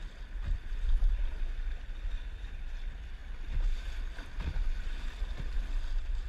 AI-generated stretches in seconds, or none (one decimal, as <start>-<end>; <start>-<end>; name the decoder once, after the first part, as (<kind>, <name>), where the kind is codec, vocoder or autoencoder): 0.0-1.0 (vocoder, BigVGAN v2)